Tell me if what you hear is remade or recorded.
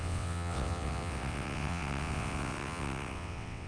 remade